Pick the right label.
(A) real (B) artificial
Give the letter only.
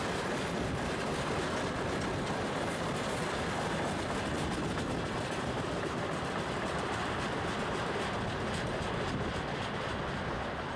A